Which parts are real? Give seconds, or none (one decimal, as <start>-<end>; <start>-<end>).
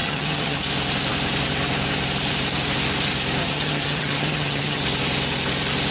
0.6-3.4; 4.8-5.9